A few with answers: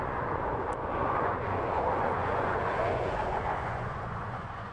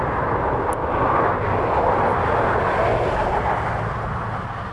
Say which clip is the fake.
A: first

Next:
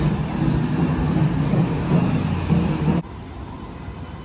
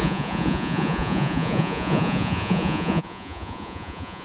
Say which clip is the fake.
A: second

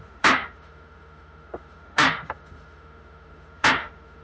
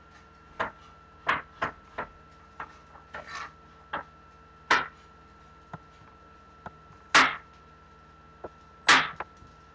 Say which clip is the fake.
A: first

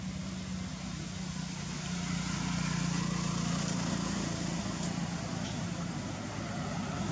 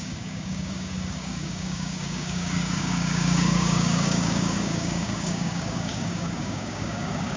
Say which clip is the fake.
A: second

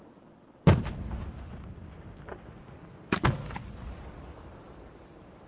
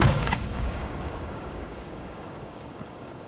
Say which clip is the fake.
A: second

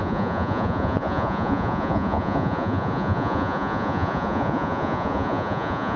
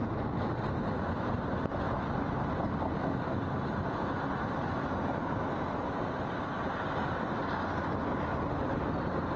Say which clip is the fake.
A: first